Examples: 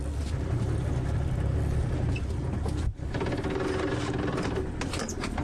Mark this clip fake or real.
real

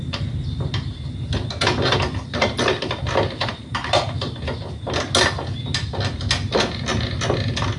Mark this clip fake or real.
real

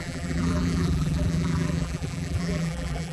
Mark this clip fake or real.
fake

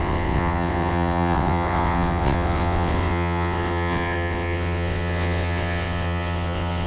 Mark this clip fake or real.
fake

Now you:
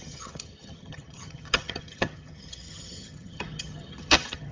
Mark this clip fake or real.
fake